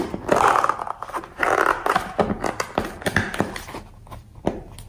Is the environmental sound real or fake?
real